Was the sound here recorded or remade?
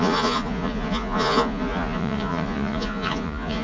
remade